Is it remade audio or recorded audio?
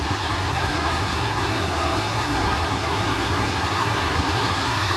remade